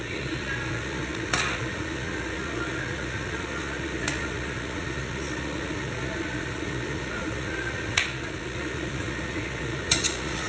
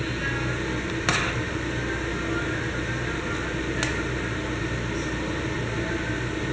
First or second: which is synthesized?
first